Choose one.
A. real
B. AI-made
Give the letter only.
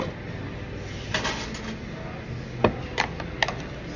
A